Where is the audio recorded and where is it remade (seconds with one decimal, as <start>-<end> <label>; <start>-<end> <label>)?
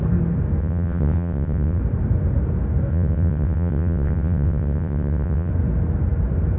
0.0-0.6 recorded; 0.6-1.8 remade; 1.8-2.9 recorded; 2.9-5.5 remade; 5.5-6.6 recorded